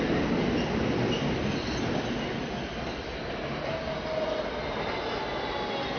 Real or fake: real